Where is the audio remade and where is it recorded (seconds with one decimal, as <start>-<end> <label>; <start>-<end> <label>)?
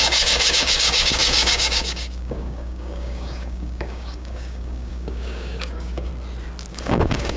0.0-6.1 remade; 6.1-6.7 recorded; 6.7-7.4 remade